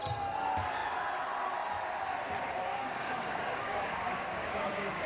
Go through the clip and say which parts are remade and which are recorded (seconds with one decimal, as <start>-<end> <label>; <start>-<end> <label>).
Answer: 0.0-2.7 recorded; 2.7-5.1 remade